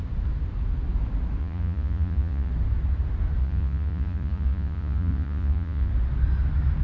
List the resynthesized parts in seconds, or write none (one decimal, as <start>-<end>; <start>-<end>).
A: 1.4-2.5; 3.4-5.9